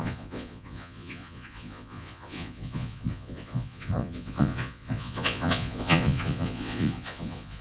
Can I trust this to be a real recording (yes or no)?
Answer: no